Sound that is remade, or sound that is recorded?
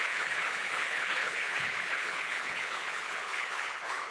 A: remade